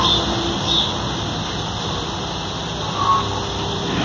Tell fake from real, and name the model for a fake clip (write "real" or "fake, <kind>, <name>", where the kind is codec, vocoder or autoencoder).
real